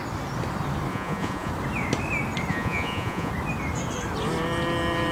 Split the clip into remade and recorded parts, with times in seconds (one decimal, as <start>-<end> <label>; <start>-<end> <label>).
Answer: 0.0-0.9 recorded; 0.9-1.5 remade; 1.5-2.5 recorded; 2.5-3.3 remade; 3.3-5.1 recorded